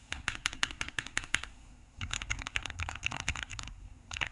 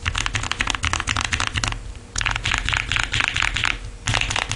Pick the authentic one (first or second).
second